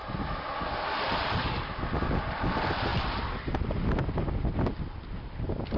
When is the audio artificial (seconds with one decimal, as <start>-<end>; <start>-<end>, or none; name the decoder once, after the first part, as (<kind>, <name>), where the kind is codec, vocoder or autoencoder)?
none

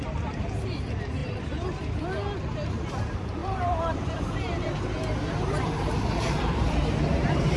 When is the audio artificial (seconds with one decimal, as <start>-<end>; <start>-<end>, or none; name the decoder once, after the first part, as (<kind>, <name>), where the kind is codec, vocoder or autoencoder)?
1.2-1.8 (vocoder, BigVGAN v2); 3.4-7.6